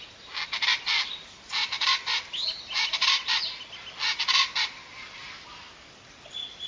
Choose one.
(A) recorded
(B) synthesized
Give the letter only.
A